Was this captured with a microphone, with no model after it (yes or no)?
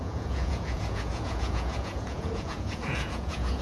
no